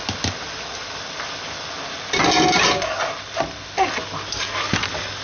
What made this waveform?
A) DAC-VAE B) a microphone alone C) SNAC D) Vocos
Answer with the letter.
B